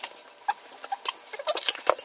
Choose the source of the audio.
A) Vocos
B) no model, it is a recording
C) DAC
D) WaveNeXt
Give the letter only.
B